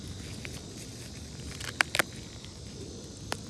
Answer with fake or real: real